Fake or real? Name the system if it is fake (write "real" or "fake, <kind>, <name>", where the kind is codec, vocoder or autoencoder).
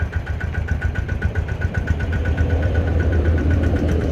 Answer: fake, vocoder, BigVGAN v2